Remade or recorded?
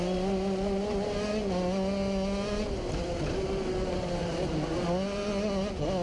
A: recorded